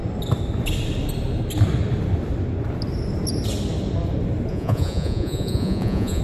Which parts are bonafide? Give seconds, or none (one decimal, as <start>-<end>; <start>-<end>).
0.0-4.5